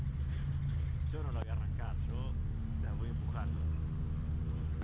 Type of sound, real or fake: real